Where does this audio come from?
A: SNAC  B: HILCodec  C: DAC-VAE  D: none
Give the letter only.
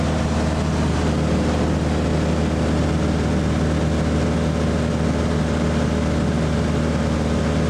D